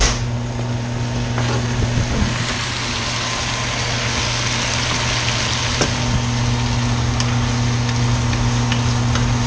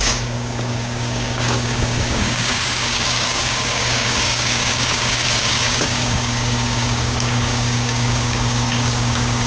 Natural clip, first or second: first